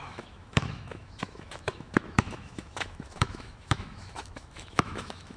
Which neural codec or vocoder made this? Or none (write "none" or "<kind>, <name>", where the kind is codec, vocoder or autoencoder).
autoencoder, DAC-VAE